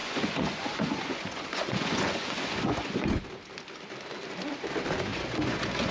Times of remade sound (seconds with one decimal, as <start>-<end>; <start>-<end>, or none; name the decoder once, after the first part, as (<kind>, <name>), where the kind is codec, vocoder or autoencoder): 0.0-3.2 (vocoder, Vocos); 5.1-5.9

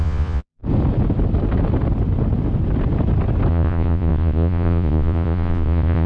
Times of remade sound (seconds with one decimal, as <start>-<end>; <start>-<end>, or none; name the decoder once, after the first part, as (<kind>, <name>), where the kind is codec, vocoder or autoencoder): 0.0-0.6 (vocoder, Vocos); 3.5-6.1

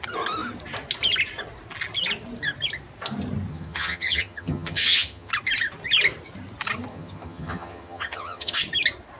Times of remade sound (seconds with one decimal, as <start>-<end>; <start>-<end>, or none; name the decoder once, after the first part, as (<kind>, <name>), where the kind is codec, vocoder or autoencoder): 3.5-5.3 (vocoder, HiFi-GAN); 6.9-8.6

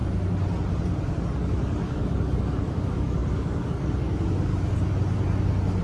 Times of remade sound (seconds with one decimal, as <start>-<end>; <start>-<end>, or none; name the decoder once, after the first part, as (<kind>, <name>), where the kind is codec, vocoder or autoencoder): 1.2-4.5 (codec, DAC)

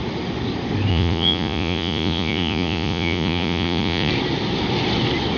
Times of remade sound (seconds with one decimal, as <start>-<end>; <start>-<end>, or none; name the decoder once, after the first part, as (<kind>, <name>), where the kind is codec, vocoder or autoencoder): 0.9-4.1 (vocoder, Vocos)

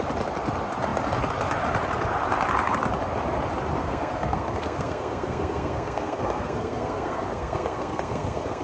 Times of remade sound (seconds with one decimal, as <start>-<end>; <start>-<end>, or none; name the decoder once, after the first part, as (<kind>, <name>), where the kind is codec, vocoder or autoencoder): 3.8-8.6 (codec, SNAC)

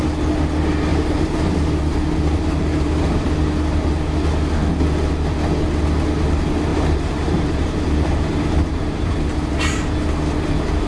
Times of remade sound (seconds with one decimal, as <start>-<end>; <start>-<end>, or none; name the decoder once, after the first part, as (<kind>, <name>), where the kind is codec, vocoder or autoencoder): 0.9-2.9 (vocoder, BigVGAN v2); 6.7-9.5